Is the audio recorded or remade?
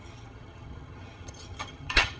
remade